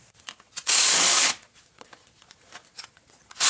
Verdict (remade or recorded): remade